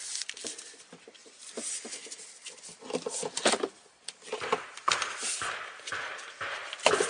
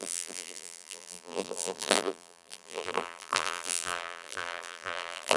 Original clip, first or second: first